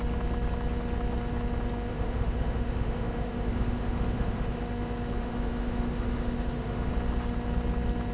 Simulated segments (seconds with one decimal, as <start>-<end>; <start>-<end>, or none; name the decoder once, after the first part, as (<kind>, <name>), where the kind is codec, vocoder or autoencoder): 1.9-4.6 (autoencoder, DAC-VAE); 5.2-6.9